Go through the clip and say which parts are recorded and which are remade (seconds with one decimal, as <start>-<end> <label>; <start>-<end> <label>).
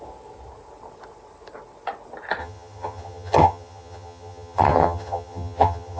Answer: 0.0-2.4 recorded; 2.4-6.0 remade